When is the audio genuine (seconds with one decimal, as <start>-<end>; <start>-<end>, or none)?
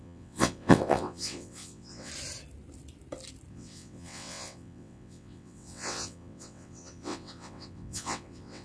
2.1-3.5